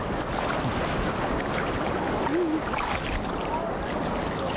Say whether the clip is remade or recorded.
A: recorded